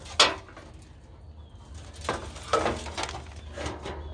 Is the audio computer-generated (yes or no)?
no